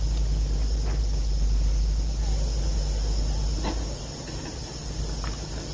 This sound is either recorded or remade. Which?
recorded